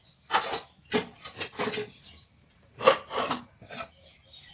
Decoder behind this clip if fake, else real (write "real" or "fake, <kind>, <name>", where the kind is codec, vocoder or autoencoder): real